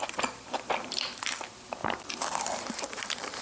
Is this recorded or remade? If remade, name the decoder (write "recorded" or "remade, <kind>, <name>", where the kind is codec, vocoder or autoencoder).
remade, vocoder, BigVGAN v2